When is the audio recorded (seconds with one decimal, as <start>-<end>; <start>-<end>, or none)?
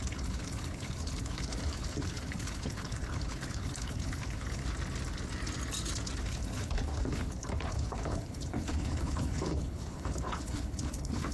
4.6-6.2